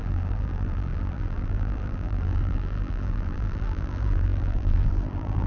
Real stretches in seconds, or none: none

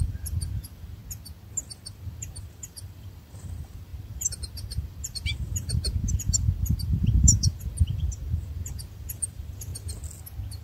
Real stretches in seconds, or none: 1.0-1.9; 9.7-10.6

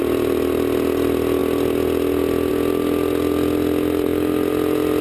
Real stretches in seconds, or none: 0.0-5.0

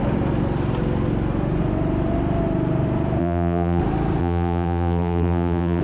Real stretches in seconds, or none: 0.0-3.2; 3.8-4.2